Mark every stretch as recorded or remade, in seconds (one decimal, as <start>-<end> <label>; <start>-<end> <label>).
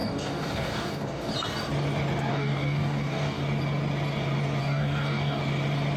0.0-1.3 remade; 1.3-2.3 recorded; 2.3-3.4 remade; 3.4-4.6 recorded; 4.6-5.4 remade; 5.4-6.0 recorded